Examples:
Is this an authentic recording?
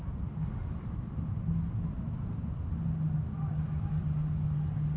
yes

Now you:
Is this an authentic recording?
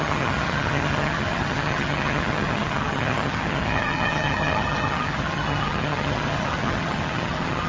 no